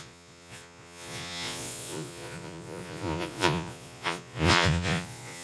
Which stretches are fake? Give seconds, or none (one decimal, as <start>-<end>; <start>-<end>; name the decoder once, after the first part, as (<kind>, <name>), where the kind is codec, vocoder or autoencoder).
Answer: 0.0-5.4 (vocoder, Vocos)